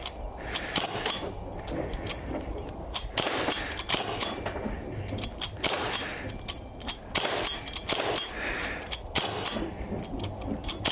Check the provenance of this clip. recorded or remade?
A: recorded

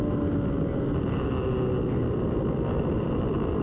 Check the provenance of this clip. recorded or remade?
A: recorded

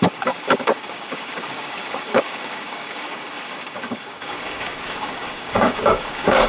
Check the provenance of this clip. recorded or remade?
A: remade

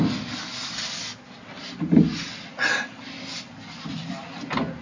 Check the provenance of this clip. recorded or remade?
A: recorded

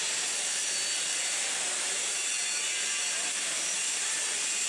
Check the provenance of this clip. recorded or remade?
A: remade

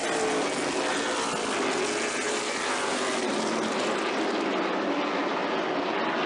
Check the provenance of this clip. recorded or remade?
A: recorded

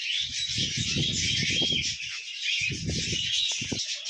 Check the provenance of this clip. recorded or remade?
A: recorded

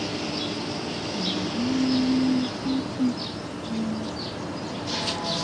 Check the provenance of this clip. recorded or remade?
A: recorded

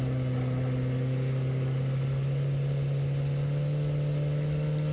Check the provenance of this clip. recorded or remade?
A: recorded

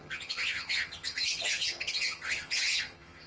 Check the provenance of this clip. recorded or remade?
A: remade